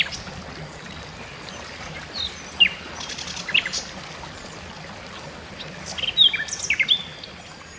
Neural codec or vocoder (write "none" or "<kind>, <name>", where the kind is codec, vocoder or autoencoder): none